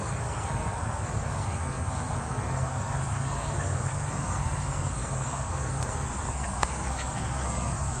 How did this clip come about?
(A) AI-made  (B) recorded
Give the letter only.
A